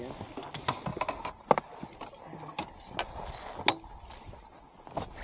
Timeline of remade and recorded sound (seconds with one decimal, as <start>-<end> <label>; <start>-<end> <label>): 0.0-5.2 recorded